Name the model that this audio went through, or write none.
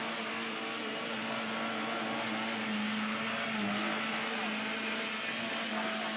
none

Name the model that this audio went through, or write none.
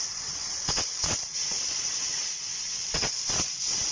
vocoder, WaveNeXt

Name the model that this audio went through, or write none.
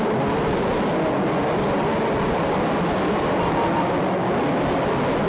none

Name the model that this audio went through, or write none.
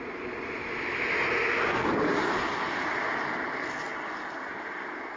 none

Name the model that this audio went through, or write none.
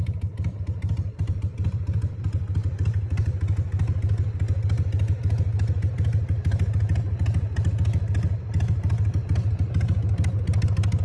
none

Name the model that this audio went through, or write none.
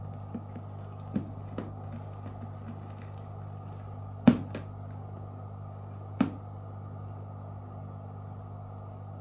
none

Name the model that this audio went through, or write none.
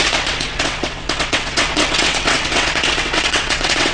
vocoder, WaveNeXt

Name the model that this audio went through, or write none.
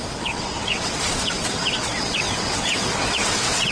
vocoder, WaveNeXt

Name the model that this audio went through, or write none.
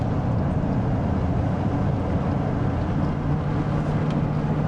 none